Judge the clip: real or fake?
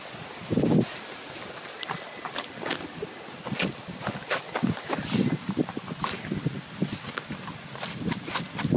real